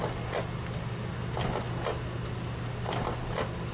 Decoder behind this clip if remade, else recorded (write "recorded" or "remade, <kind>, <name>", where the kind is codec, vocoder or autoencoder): recorded